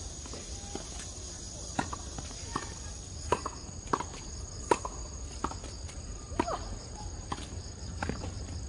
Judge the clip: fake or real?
real